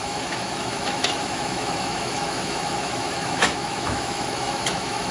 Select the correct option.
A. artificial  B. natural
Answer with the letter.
A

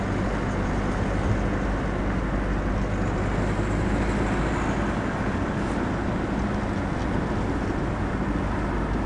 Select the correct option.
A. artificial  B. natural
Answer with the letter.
B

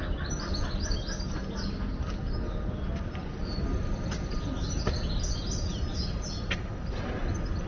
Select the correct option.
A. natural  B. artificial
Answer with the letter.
A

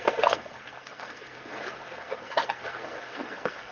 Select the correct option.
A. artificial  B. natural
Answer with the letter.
A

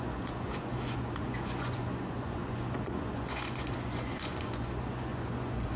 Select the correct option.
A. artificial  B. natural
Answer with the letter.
A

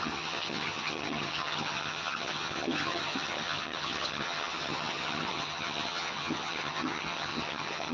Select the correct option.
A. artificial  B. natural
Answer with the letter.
A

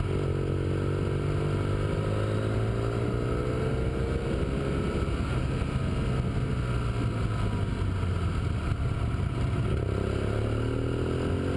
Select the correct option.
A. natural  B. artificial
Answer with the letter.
A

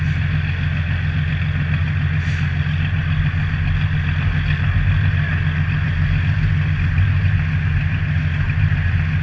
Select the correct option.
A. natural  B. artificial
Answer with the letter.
A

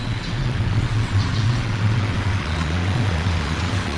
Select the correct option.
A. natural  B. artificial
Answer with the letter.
B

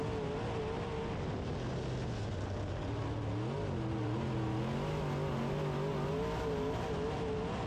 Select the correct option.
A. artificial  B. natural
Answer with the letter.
B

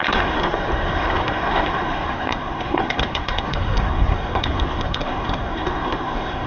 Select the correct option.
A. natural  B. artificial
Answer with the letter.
B